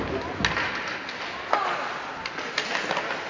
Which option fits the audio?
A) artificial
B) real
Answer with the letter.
B